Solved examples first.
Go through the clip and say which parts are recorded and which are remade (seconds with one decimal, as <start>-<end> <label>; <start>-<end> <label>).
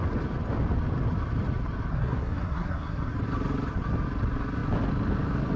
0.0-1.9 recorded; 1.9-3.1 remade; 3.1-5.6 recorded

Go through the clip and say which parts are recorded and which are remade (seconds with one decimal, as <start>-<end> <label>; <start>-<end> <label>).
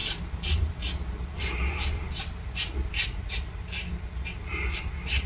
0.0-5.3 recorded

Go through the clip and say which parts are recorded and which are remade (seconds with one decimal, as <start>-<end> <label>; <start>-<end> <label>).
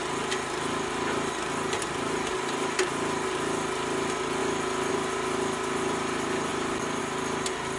0.0-7.8 recorded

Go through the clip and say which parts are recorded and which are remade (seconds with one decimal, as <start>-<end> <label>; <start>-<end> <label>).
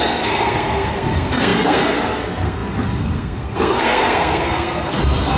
0.0-5.4 remade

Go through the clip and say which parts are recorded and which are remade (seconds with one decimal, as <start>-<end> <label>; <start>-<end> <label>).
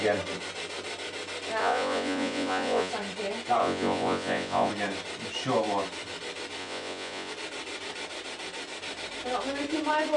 0.0-1.6 recorded; 1.6-2.9 remade; 2.9-3.6 recorded; 3.6-4.7 remade; 4.7-6.6 recorded; 6.6-7.3 remade; 7.3-10.2 recorded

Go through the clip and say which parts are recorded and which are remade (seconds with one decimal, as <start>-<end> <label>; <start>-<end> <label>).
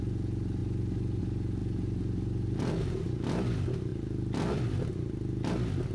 0.0-5.9 recorded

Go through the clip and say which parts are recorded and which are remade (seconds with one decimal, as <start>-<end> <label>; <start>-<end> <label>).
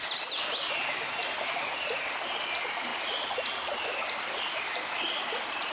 0.0-5.7 recorded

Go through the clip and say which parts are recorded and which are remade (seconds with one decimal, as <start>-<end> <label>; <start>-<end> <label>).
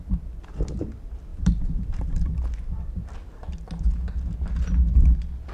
0.0-1.3 recorded; 1.3-2.3 remade; 2.3-5.5 recorded